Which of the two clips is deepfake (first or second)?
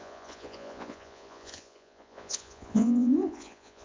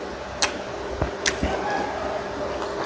first